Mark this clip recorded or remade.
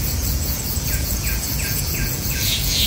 remade